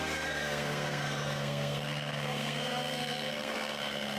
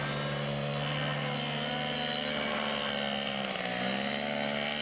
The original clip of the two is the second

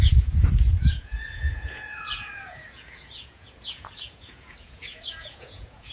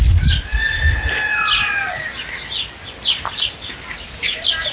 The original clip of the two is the second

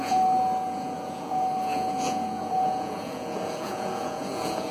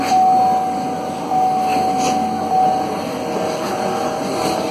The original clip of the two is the second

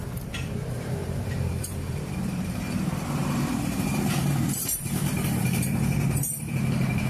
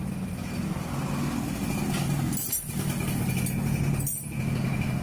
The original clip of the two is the second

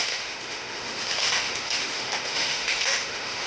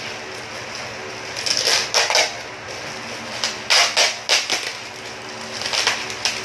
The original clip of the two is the second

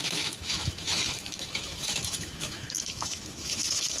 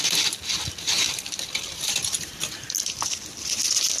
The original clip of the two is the second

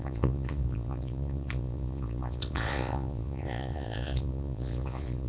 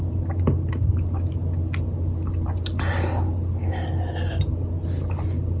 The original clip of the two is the second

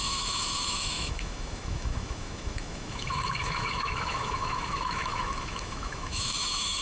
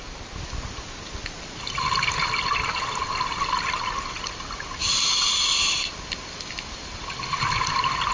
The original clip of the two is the second